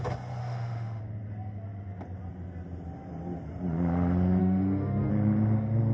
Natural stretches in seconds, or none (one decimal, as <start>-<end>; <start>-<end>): 0.0-0.4; 1.0-4.4; 5.1-5.9